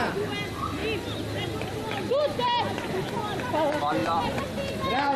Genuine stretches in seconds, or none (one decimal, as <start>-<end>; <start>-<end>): 0.0-4.0